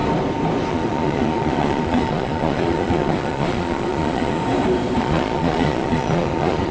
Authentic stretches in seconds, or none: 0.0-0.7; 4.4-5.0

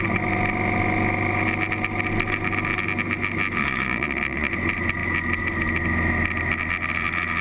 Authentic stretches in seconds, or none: 0.0-3.6; 4.5-7.4